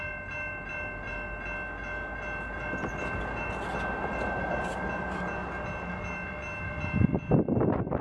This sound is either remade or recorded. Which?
recorded